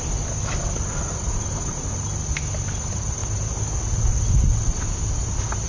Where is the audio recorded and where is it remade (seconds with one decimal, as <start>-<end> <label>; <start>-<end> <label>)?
0.0-5.7 recorded